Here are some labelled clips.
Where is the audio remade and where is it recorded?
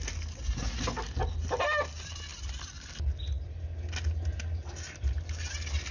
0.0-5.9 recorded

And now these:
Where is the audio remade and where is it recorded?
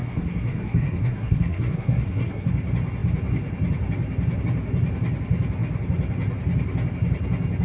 0.0-2.5 remade; 2.5-7.6 recorded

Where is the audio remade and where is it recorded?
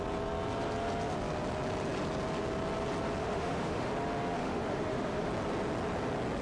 0.0-3.2 recorded; 3.2-3.9 remade; 3.9-4.4 recorded; 4.4-5.3 remade; 5.3-6.4 recorded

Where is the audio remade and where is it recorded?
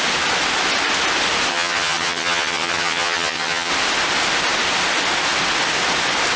0.0-1.5 recorded; 1.5-3.7 remade; 3.7-6.4 recorded